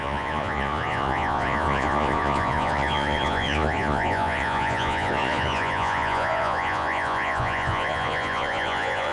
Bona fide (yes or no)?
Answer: no